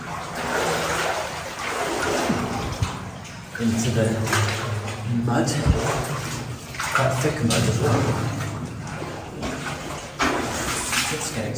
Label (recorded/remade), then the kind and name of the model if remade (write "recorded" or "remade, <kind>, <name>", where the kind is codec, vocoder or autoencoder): recorded